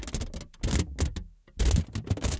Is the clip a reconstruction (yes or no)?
no